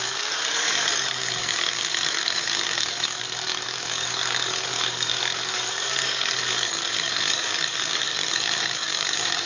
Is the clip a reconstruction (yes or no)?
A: yes